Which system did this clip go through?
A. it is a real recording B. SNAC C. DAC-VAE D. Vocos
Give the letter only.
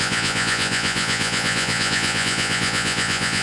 D